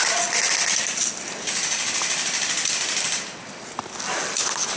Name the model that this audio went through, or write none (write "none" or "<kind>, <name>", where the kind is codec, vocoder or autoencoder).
none